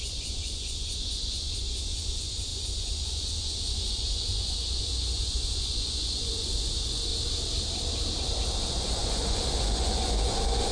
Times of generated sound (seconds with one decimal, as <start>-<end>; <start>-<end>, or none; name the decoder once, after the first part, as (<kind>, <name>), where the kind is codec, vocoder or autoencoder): 0.0-7.1 (vocoder, Vocos); 8.6-10.7